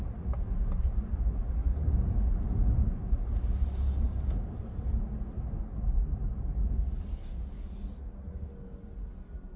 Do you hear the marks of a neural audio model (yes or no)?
no